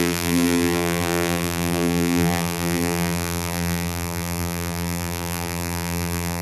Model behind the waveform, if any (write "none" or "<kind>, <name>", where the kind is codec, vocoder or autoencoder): vocoder, BigVGAN v2